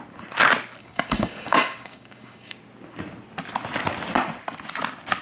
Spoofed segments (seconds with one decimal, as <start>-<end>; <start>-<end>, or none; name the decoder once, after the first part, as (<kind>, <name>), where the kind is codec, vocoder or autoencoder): 0.8-2.6 (codec, DAC)